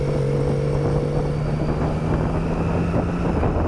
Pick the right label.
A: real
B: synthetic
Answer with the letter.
A